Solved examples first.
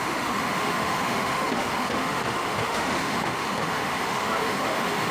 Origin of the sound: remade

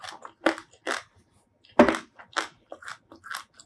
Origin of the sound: recorded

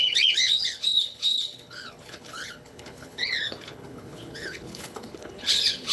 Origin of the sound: remade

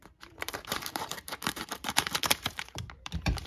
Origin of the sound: remade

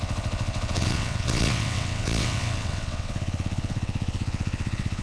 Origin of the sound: remade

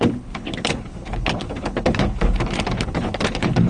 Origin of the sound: remade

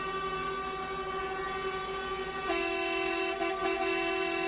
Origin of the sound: recorded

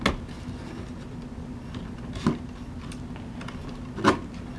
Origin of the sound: recorded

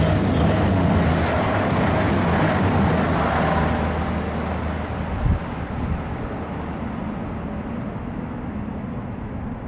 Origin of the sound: recorded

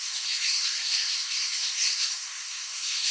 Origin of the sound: remade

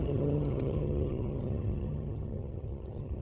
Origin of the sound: remade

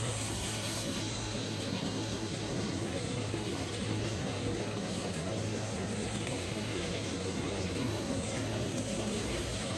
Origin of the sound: remade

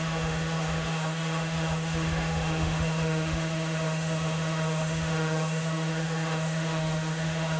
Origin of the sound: remade